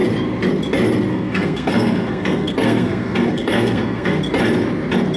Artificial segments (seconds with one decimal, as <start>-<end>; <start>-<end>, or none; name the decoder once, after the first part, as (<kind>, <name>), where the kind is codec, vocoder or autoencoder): 1.1-4.2 (codec, SNAC)